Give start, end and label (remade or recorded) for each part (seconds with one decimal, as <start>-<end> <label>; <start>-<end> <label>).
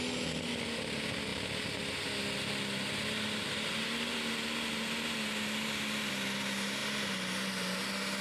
0.0-8.2 recorded